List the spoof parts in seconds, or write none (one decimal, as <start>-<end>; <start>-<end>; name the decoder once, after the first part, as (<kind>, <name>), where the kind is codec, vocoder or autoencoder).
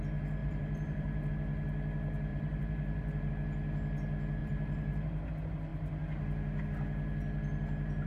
0.4-1.3 (vocoder, BigVGAN v2); 2.3-3.3; 4.4-5.3